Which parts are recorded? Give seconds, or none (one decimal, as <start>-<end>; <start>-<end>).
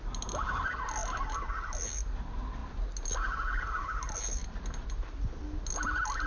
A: 0.0-6.3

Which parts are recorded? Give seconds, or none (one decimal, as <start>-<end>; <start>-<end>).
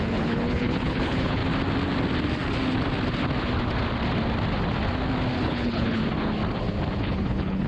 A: 1.4-5.4; 6.0-7.0